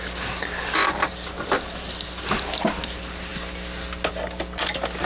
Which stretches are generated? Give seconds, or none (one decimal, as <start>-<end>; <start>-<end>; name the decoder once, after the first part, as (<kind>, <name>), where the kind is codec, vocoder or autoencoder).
none